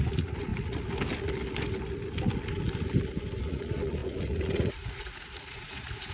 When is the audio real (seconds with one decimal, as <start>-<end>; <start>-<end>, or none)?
0.5-3.4